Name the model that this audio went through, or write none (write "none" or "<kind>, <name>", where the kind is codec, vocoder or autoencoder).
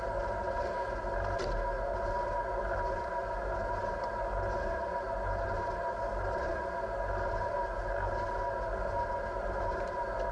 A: none